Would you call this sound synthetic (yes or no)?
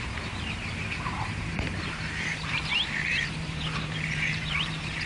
yes